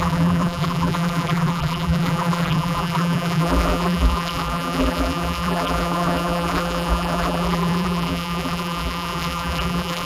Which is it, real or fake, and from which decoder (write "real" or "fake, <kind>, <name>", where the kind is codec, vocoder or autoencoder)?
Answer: fake, vocoder, BigVGAN v2